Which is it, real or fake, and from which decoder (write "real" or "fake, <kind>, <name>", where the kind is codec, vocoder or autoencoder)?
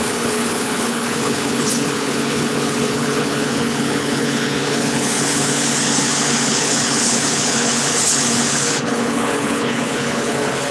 fake, codec, HILCodec